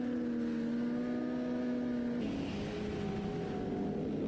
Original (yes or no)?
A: yes